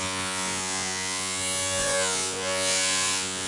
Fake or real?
fake